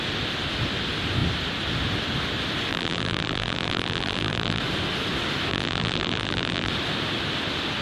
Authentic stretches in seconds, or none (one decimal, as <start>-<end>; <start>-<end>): 0.0-2.7; 4.6-5.5; 6.7-7.8